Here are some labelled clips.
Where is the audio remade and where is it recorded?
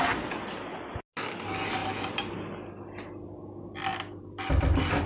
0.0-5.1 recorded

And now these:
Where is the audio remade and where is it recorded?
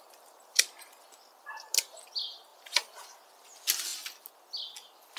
0.0-5.2 recorded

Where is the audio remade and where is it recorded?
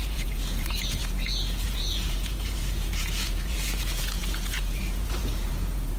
0.0-6.0 remade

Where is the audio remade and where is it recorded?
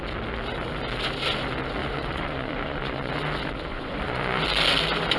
0.0-1.8 recorded; 1.8-3.1 remade; 3.1-3.7 recorded; 3.7-4.4 remade; 4.4-5.2 recorded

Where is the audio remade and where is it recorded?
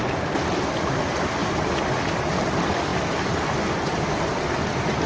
0.0-5.1 recorded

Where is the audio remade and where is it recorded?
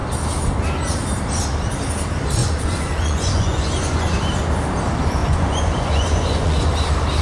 0.0-2.4 recorded; 2.4-4.2 remade; 4.2-5.2 recorded; 5.2-6.7 remade; 6.7-7.2 recorded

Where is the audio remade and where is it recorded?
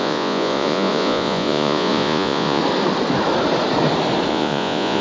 0.0-2.6 remade; 2.6-4.3 recorded; 4.3-5.0 remade